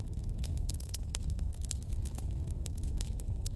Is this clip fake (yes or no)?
yes